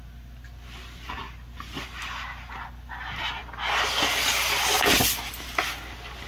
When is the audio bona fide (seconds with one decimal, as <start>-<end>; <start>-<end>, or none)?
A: 0.0-6.3